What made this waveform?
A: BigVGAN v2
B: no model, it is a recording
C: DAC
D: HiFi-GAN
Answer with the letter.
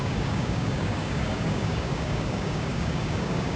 C